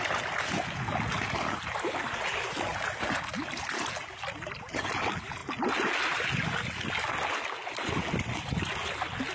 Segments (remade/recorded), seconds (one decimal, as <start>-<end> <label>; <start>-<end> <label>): 0.0-9.3 recorded